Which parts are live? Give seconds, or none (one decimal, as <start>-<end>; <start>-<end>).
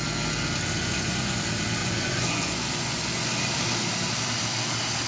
0.0-0.8; 1.4-1.8; 3.3-5.1